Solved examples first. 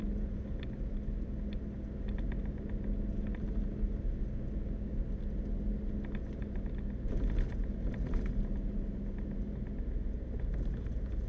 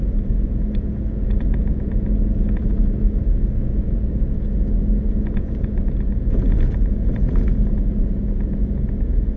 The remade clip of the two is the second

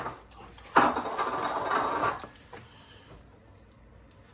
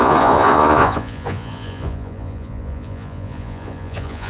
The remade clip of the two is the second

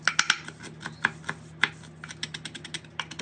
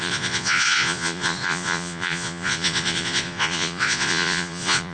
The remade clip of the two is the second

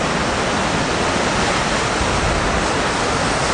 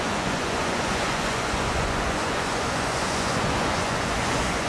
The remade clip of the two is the second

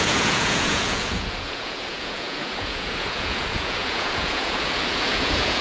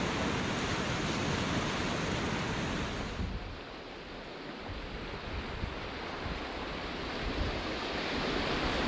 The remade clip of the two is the first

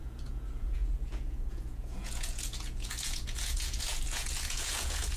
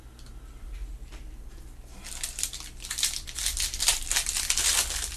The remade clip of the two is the first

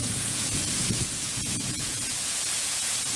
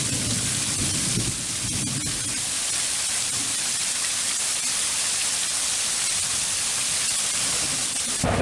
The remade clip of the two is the first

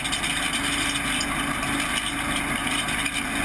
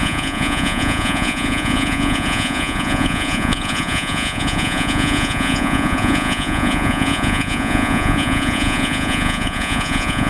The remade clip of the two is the second